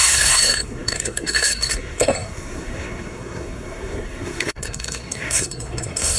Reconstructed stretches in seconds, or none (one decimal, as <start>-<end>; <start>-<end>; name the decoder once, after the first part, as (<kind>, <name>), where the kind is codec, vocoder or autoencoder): 0.0-6.2 (codec, SNAC)